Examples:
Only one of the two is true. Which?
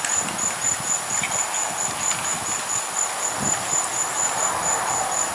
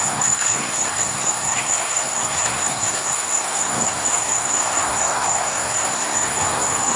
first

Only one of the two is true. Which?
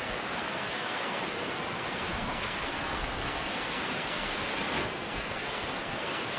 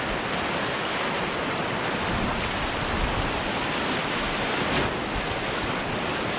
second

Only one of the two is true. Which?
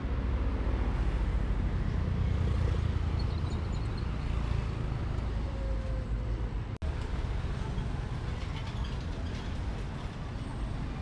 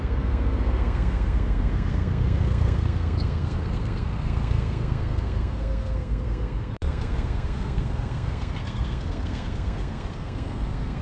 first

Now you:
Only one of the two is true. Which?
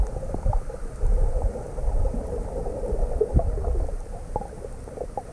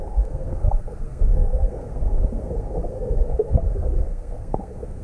first